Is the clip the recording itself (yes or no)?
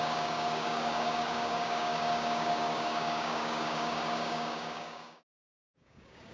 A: no